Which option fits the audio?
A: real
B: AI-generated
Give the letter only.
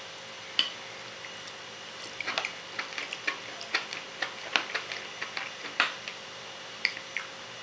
A